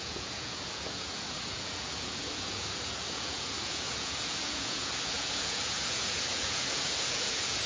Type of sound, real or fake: fake